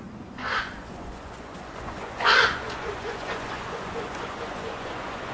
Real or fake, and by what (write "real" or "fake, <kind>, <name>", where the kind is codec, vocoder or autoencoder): fake, vocoder, Vocos